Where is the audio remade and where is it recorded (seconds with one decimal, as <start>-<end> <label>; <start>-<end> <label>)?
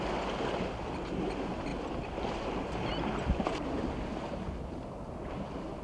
0.0-5.8 recorded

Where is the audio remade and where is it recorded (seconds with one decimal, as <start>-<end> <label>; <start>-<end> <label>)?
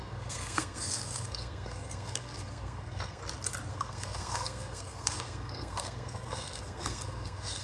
0.0-3.2 remade; 3.2-3.7 recorded; 3.7-7.6 remade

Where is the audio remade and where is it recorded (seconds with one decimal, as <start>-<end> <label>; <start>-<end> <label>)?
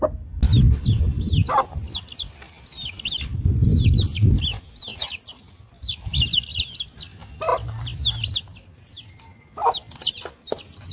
0.0-4.9 recorded; 4.9-5.4 remade; 5.4-10.9 recorded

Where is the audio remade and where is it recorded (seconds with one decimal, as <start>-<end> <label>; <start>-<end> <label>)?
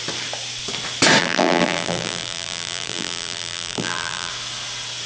0.0-1.2 recorded; 1.2-4.3 remade; 4.3-5.1 recorded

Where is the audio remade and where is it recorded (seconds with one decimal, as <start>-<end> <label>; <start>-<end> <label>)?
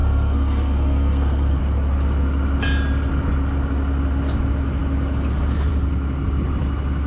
0.0-1.6 remade; 1.6-7.1 recorded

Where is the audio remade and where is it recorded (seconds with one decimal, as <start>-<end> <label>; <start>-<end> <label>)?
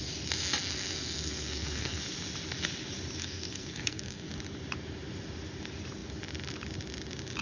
0.0-0.7 recorded; 0.7-2.0 remade; 2.0-3.2 recorded; 3.2-4.3 remade; 4.3-7.4 recorded